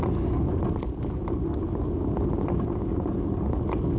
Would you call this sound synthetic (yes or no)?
no